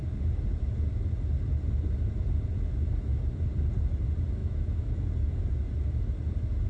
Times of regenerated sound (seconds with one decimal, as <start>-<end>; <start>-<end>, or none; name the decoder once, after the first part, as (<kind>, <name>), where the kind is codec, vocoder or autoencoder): 4.4-5.0 (autoencoder, DAC-VAE)